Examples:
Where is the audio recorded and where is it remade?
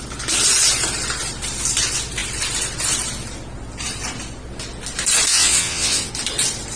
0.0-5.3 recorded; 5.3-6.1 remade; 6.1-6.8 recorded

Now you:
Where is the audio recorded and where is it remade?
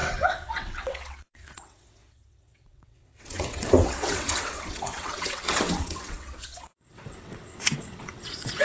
0.0-8.6 remade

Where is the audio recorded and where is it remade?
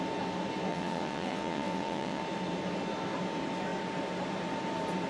0.0-0.7 recorded; 0.7-2.2 remade; 2.2-5.1 recorded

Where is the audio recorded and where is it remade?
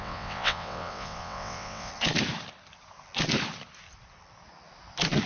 0.0-1.9 remade; 1.9-5.3 recorded